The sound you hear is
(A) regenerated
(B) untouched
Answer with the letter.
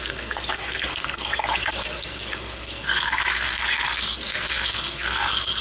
A